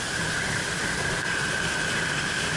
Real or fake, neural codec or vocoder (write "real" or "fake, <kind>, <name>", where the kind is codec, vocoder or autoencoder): real